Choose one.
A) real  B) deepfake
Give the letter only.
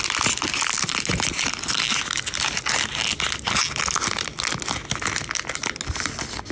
A